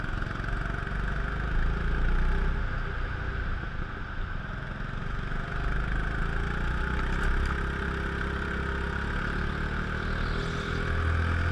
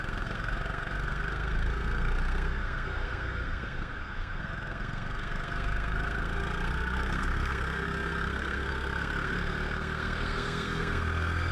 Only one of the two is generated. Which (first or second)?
second